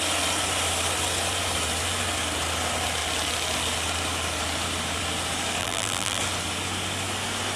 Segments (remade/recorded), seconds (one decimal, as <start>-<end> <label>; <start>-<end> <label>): 0.0-5.6 recorded; 5.6-6.2 remade; 6.2-7.6 recorded